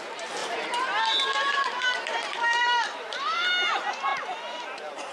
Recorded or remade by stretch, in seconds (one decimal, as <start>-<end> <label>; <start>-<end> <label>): 0.0-0.4 recorded; 0.4-3.5 remade; 3.5-4.1 recorded; 4.1-5.1 remade